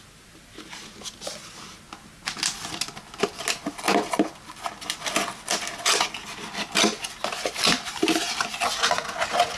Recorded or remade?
recorded